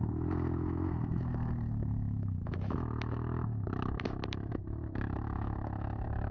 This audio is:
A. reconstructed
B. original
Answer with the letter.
A